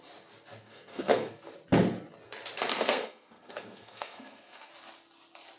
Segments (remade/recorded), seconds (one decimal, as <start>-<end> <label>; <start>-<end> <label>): 0.0-0.6 recorded; 0.6-1.3 remade; 1.3-2.7 recorded; 2.7-4.7 remade; 4.7-5.6 recorded